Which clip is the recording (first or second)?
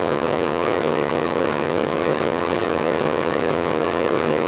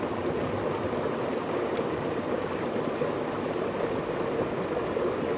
second